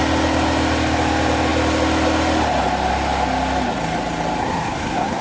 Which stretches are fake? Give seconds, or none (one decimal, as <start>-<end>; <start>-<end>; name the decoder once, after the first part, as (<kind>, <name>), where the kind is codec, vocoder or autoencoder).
4.4-5.2 (codec, SNAC)